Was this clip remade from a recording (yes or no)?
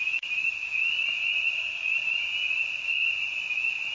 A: no